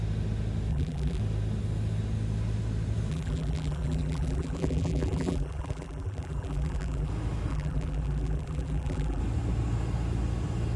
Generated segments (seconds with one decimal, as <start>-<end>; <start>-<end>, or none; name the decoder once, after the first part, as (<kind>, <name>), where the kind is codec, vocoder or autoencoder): 0.7-1.2 (vocoder, BigVGAN v2); 3.1-7.1; 7.5-9.2